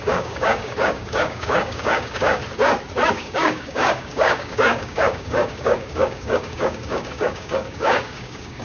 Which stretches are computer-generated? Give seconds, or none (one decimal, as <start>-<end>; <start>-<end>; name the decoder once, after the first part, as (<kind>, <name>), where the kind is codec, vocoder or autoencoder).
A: 0.0-2.4 (codec, DAC); 3.1-8.6